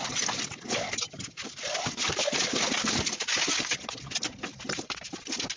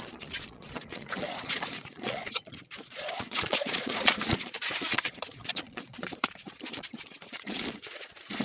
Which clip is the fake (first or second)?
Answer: second